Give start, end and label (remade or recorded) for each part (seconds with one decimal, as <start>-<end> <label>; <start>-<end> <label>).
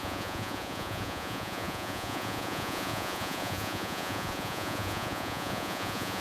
0.0-6.2 remade